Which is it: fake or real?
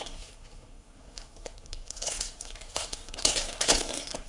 fake